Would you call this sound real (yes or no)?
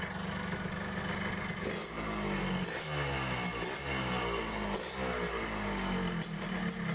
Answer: yes